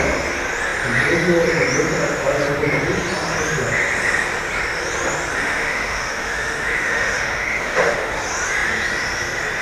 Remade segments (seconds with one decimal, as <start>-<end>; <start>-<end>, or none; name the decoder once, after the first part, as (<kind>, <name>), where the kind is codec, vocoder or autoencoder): 5.4-8.1 (autoencoder, DAC-VAE)